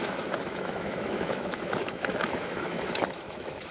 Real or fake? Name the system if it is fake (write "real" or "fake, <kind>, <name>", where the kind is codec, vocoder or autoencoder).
fake, autoencoder, DAC-VAE